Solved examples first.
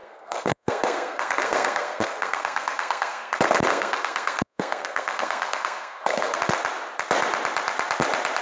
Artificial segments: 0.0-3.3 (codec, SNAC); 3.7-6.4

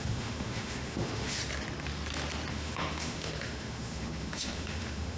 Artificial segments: 0.0-1.4 (autoencoder, DAC-VAE); 2.5-5.2